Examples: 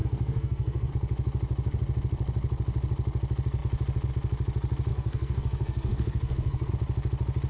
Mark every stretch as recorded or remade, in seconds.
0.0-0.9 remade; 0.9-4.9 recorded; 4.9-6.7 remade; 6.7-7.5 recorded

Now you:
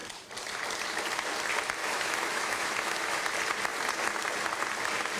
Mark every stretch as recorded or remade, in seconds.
0.0-1.8 recorded; 1.8-3.2 remade; 3.2-5.2 recorded

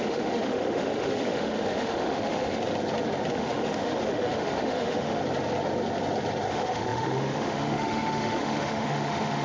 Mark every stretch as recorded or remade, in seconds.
0.0-2.6 remade; 2.6-3.3 recorded; 3.3-5.2 remade; 5.2-6.5 recorded; 6.5-9.4 remade

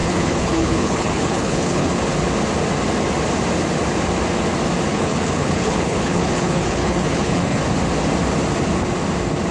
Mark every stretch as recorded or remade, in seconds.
0.0-1.9 remade; 1.9-4.9 recorded; 4.9-7.6 remade; 7.6-9.5 recorded

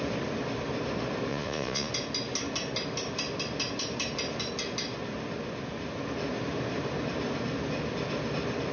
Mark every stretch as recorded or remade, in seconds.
0.0-1.3 recorded; 1.3-1.9 remade; 1.9-8.7 recorded

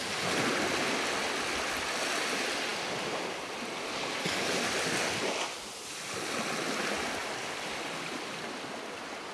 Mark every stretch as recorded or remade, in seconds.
0.0-7.2 recorded; 7.2-8.5 remade; 8.5-9.3 recorded

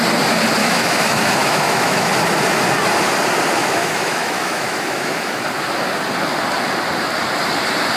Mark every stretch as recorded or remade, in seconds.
0.0-0.6 recorded; 0.6-2.1 remade; 2.1-3.6 recorded; 3.6-5.4 remade; 5.4-8.0 recorded

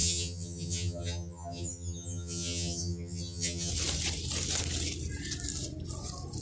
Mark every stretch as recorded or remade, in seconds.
0.0-3.7 remade; 3.7-6.4 recorded